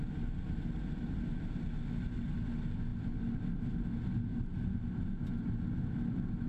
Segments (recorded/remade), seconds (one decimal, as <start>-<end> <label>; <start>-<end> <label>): 0.0-6.5 recorded